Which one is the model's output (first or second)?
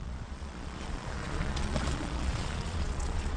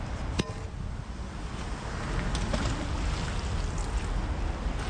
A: first